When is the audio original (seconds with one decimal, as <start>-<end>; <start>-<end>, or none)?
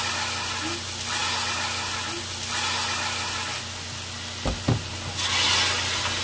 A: 0.0-6.2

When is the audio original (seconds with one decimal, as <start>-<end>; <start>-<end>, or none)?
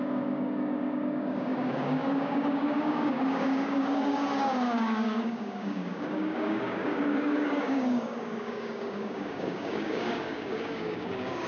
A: none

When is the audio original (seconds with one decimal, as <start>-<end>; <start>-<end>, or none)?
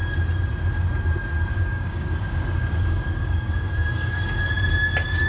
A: 0.0-1.5; 4.5-5.3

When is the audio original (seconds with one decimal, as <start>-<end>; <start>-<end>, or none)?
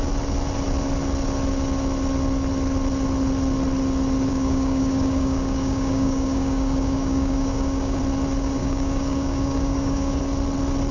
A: 0.0-4.3; 8.0-8.6; 10.2-10.9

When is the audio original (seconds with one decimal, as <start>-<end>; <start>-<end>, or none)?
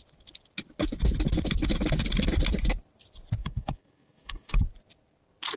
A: 0.0-3.4; 4.6-5.6